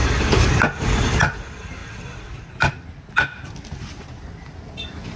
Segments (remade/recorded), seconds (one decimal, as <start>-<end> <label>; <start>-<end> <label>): 0.0-5.2 recorded